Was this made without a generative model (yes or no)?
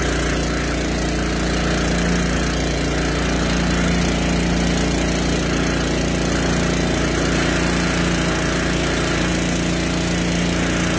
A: yes